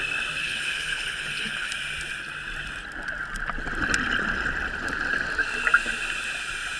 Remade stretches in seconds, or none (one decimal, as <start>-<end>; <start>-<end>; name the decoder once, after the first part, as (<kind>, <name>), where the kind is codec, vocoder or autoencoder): 0.4-1.7 (codec, HILCodec)